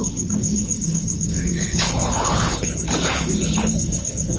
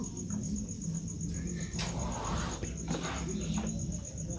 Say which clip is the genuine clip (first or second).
second